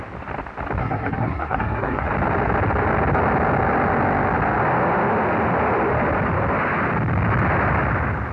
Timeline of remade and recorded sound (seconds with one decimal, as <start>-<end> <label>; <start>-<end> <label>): 0.0-0.8 recorded; 0.8-2.1 remade; 2.1-8.3 recorded